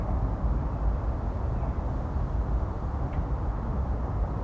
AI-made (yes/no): no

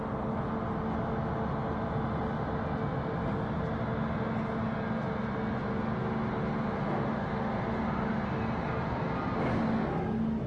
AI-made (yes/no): no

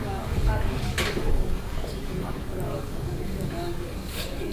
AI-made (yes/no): yes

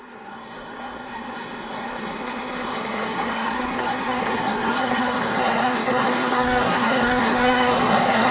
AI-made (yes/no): yes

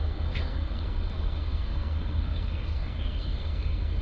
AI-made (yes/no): yes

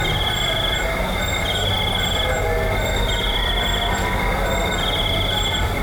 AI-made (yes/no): no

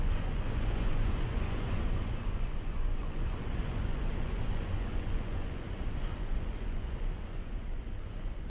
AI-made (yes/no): yes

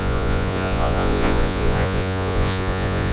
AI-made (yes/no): yes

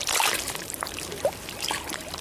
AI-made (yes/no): yes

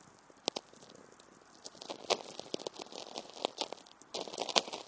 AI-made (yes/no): no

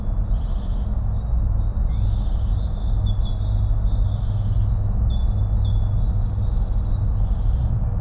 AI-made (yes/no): no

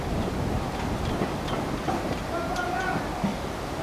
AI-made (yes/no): no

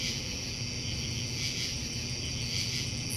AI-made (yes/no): yes